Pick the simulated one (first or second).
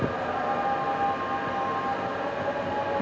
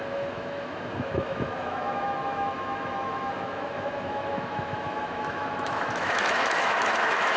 second